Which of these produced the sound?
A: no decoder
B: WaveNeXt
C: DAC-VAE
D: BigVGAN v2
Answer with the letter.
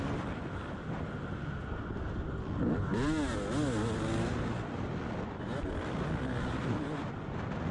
A